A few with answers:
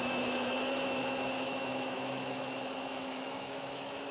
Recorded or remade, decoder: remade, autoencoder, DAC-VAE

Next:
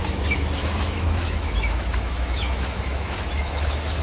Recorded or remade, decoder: remade, autoencoder, DAC-VAE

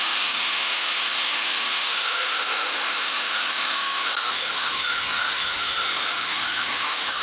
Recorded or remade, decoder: remade, autoencoder, DAC-VAE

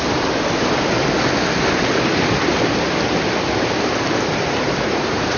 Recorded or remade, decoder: recorded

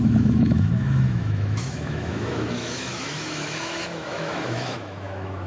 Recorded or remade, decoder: remade, autoencoder, DAC-VAE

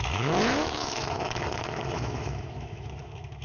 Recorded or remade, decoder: remade, autoencoder, DAC-VAE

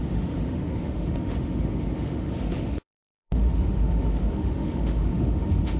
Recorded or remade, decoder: remade, autoencoder, DAC-VAE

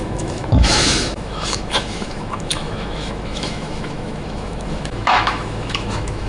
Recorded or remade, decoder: remade, autoencoder, DAC-VAE